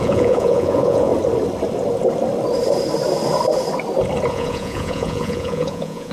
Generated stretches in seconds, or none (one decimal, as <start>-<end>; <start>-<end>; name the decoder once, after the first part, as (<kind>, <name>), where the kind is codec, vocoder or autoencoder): 0.0-1.1 (vocoder, Vocos); 4.3-6.1